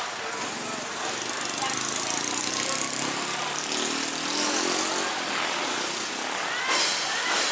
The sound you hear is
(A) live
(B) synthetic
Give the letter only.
A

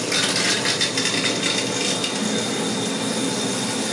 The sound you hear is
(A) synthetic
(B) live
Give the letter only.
B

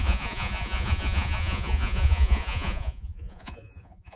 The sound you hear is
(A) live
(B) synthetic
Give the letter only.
B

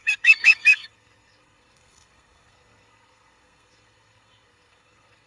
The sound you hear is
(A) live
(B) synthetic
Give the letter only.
B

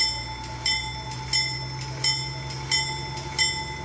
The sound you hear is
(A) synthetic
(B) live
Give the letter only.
B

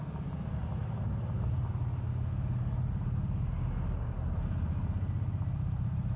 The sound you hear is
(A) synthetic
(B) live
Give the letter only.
B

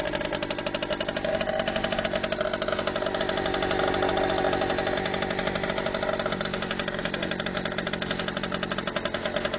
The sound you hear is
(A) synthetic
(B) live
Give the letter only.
B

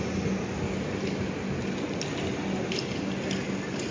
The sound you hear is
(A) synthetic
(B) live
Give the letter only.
B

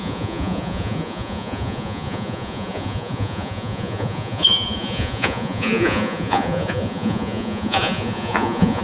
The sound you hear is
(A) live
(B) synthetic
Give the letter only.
B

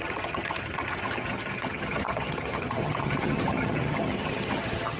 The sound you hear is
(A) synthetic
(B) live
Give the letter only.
A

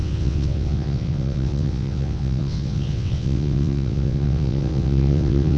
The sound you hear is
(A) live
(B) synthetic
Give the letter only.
B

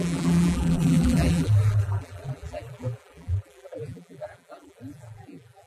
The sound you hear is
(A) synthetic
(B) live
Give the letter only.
A